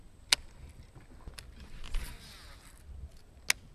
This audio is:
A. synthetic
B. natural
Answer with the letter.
B